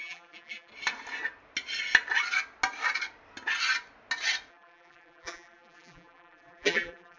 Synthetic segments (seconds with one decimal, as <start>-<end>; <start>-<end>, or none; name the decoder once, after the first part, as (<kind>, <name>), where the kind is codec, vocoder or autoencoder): 0.0-0.7 (vocoder, BigVGAN v2); 4.5-7.2

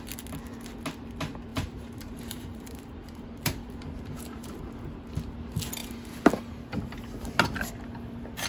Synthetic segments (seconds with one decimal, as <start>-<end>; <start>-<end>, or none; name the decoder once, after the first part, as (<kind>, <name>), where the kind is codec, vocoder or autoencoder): 1.5-4.6 (vocoder, BigVGAN v2)

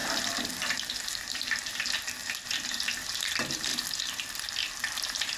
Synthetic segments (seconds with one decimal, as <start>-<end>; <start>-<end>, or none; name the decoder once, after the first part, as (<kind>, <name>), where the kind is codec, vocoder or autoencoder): 1.2-2.2 (vocoder, BigVGAN v2); 2.9-3.7; 4.7-5.4

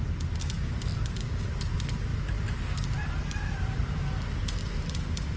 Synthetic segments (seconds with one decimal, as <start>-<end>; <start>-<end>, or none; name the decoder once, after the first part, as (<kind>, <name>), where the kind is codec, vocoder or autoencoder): 0.9-1.4 (vocoder, BigVGAN v2); 2.1-5.4

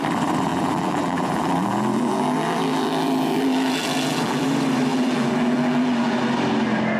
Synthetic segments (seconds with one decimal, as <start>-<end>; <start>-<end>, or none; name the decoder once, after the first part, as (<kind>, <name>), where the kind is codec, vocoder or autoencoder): 0.5-4.5 (vocoder, BigVGAN v2); 4.9-6.2